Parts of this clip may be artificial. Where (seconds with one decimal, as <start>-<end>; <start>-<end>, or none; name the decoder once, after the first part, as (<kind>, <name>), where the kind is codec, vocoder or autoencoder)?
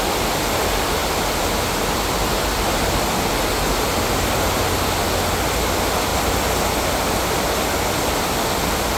none